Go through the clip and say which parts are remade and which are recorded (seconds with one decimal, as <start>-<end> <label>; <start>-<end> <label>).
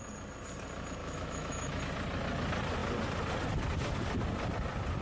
0.0-1.0 recorded; 1.0-1.8 remade; 1.8-5.0 recorded